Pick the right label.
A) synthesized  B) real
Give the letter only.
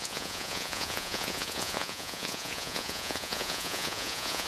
A